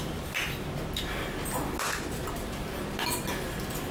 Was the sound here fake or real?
real